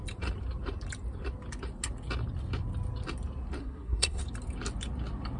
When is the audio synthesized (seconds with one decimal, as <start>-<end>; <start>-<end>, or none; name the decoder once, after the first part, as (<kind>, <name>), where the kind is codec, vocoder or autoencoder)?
3.6-4.2 (codec, SNAC)